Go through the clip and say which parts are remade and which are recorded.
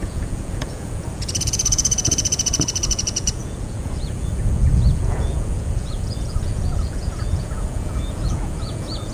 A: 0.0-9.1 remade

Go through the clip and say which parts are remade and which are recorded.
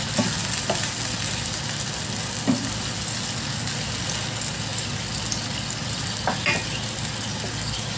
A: 0.0-4.7 recorded; 4.7-7.1 remade; 7.1-8.0 recorded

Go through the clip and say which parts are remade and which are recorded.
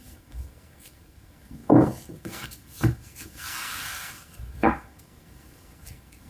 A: 0.0-6.3 remade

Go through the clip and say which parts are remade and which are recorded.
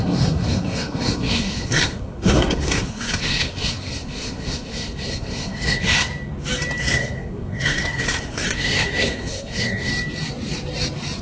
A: 0.0-6.1 remade; 6.1-6.8 recorded; 6.8-9.9 remade; 9.9-11.2 recorded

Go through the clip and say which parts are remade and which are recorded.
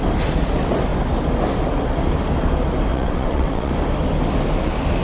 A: 0.0-2.9 recorded; 2.9-3.7 remade; 3.7-5.0 recorded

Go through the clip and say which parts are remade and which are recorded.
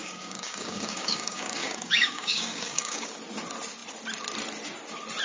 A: 0.0-3.1 remade; 3.1-5.2 recorded